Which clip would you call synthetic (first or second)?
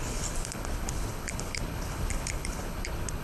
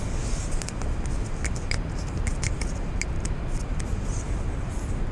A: first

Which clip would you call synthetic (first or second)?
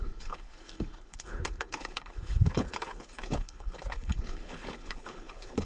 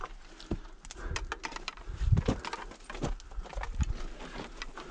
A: first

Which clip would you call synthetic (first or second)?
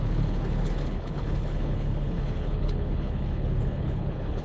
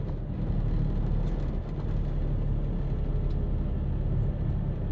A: first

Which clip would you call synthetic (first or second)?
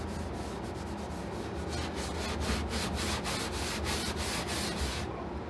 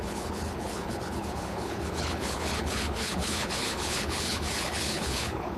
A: second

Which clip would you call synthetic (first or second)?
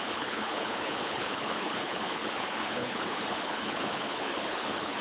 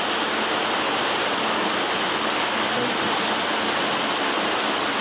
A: first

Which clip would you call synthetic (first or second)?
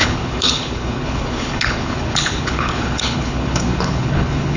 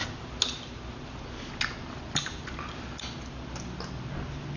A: first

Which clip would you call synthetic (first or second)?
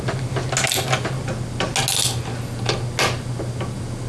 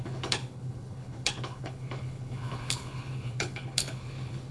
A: second